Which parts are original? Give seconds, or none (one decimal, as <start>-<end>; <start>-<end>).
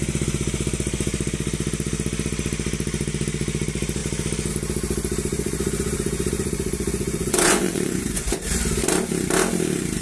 0.0-5.3; 8.4-10.0